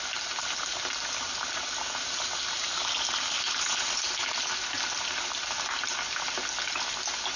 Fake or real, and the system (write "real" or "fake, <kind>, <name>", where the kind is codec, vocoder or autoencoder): real